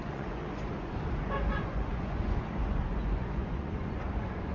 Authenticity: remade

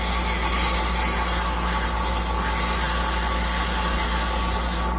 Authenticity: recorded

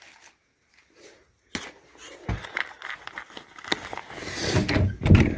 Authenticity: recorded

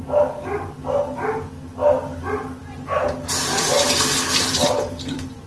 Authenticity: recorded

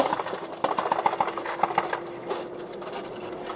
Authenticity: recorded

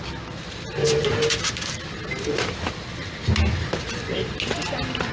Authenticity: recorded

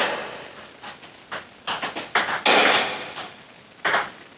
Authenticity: recorded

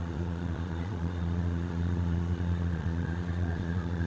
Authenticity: remade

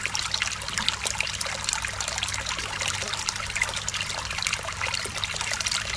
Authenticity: recorded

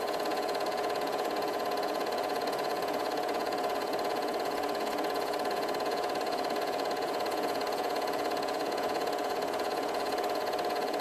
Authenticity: remade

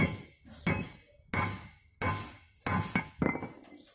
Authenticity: recorded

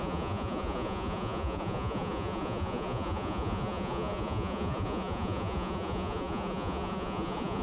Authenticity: remade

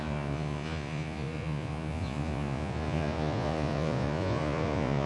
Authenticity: remade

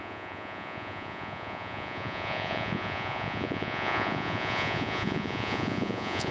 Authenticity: remade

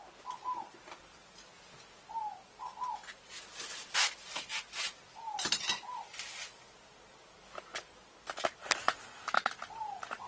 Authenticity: recorded